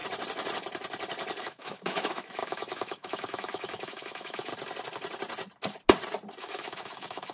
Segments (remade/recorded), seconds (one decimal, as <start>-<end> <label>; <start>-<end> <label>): 0.0-1.4 recorded; 1.4-4.5 remade; 4.5-6.4 recorded; 6.4-7.3 remade